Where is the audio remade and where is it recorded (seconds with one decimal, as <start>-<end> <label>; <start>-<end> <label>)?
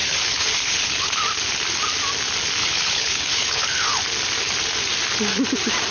0.0-1.2 remade; 1.2-2.6 recorded; 2.6-4.0 remade; 4.0-5.9 recorded